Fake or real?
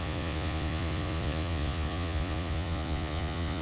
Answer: fake